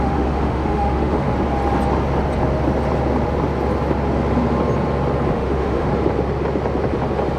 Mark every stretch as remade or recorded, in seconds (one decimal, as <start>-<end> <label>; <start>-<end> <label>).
0.0-1.3 remade; 1.3-5.3 recorded; 5.3-5.9 remade; 5.9-7.4 recorded

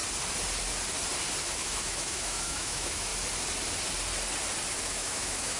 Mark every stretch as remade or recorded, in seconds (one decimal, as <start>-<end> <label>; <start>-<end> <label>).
0.0-1.4 recorded; 1.4-3.1 remade; 3.1-4.8 recorded; 4.8-5.6 remade

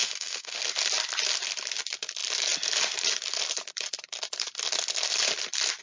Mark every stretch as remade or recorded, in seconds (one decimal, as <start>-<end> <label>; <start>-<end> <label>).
0.0-0.6 remade; 0.6-5.8 recorded